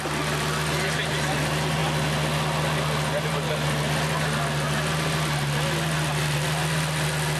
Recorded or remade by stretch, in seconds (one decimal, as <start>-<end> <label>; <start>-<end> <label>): 0.0-7.4 recorded